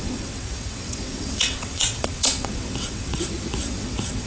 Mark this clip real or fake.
fake